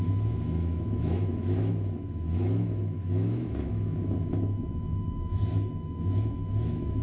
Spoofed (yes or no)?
yes